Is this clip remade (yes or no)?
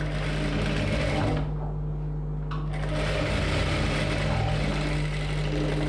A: no